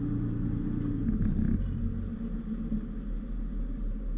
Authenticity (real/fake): real